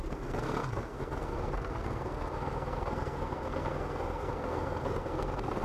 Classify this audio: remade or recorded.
remade